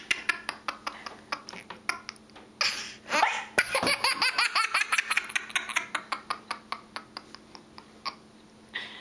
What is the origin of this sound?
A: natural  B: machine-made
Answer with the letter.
A